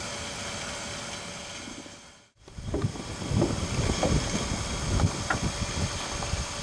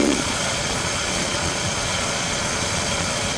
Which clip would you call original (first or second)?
first